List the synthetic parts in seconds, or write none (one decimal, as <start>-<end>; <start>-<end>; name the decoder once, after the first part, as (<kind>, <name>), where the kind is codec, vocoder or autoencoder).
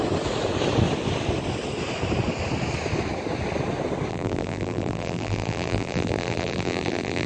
4.1-7.3 (vocoder, BigVGAN v2)